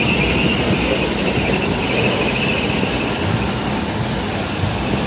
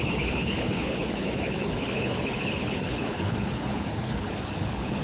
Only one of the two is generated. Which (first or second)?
second